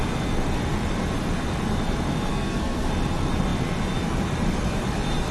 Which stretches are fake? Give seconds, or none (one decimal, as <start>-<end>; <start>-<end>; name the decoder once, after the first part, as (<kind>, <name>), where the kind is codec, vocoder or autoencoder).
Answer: 2.3-2.9 (codec, SNAC)